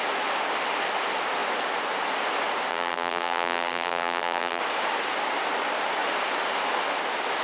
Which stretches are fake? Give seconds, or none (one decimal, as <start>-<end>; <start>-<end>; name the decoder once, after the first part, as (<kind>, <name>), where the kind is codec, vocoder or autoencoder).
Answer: 2.7-4.6 (vocoder, BigVGAN v2)